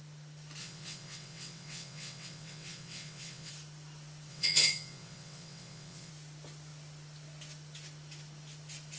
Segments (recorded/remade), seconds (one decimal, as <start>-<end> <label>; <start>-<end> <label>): 0.0-0.6 recorded; 0.6-3.5 remade; 3.5-4.3 recorded; 4.3-6.1 remade; 6.1-9.0 recorded